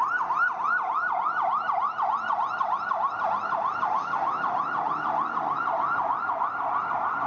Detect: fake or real real